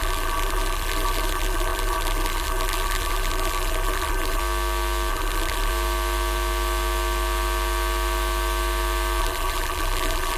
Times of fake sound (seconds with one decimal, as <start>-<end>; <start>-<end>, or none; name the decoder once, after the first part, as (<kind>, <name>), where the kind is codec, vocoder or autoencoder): 0.0-4.4 (vocoder, BigVGAN v2); 5.1-5.7; 9.2-10.4